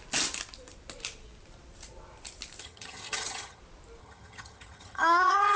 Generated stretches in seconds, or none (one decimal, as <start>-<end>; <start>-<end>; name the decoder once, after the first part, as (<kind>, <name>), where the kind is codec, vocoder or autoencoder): 2.6-3.6 (vocoder, HiFi-GAN); 4.0-5.6